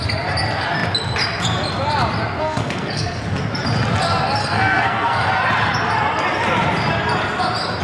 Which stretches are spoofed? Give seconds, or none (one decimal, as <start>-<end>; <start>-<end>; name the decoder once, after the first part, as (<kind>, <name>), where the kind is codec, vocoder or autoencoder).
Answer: 2.4-3.2 (codec, SNAC); 4.4-5.3